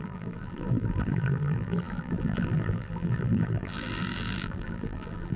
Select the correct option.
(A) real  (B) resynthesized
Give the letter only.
B